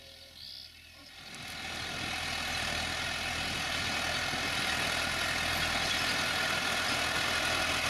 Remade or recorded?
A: recorded